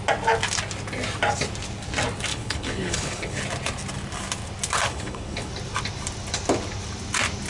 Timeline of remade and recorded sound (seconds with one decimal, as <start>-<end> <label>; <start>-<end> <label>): 0.0-2.3 recorded; 2.3-3.4 remade; 3.4-4.9 recorded; 4.9-5.5 remade; 5.5-7.5 recorded